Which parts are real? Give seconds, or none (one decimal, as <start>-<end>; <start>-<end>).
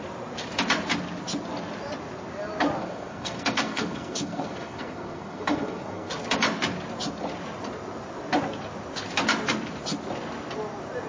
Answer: 0.0-2.8; 6.1-11.1